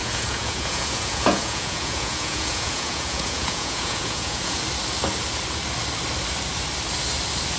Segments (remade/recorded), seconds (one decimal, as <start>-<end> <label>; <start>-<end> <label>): 0.0-4.6 remade; 4.6-7.6 recorded